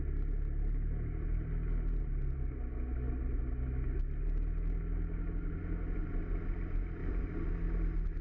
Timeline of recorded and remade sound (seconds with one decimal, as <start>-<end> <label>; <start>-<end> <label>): 0.0-7.0 recorded; 7.0-7.5 remade; 7.5-8.2 recorded